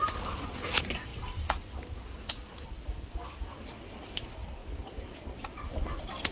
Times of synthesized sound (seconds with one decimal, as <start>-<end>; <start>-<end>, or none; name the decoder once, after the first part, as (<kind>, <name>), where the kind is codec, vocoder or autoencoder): none